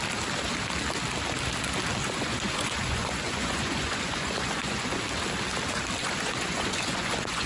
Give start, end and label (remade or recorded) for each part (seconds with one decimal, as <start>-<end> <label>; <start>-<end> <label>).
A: 0.0-2.0 recorded; 2.0-5.0 remade; 5.0-6.0 recorded; 6.0-7.5 remade